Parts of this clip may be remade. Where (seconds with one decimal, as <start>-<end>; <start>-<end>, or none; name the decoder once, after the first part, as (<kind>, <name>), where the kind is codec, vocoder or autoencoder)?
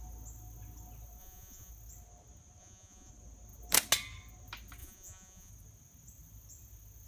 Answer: 1.2-1.7 (vocoder, Vocos); 2.6-3.1; 4.8-5.5